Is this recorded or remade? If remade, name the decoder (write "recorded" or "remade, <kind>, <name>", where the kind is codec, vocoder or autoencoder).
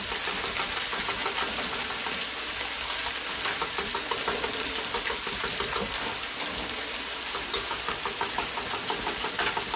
recorded